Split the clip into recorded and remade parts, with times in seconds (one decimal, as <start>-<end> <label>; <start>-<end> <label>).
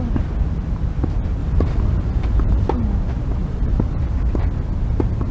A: 0.0-1.4 recorded; 1.4-2.7 remade; 2.7-3.4 recorded; 3.4-4.0 remade; 4.0-5.3 recorded